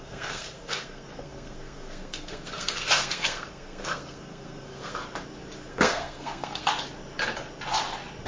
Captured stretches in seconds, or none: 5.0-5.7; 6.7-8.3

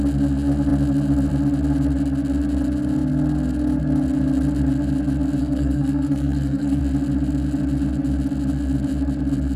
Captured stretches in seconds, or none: 0.0-5.4; 6.8-9.6

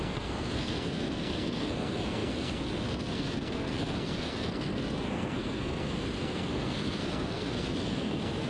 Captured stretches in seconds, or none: none

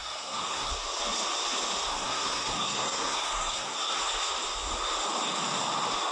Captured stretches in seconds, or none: 0.7-1.9; 4.0-6.1

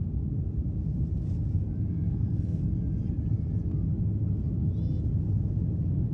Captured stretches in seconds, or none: 0.0-1.9; 2.6-6.1

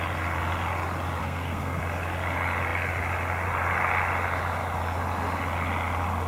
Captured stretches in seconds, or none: 0.0-1.2; 1.8-6.3